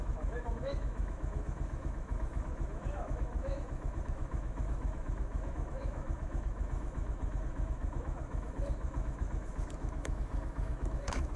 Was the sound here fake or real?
fake